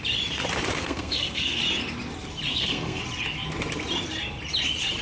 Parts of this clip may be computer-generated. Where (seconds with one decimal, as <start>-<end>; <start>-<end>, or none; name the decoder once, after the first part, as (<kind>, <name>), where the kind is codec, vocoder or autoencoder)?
0.8-1.6 (codec, SNAC); 2.5-3.0